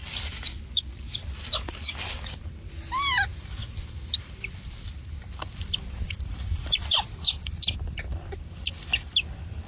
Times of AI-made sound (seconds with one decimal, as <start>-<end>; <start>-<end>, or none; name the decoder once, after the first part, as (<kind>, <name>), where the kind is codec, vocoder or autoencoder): 0.0-2.5 (vocoder, BigVGAN v2); 3.3-7.5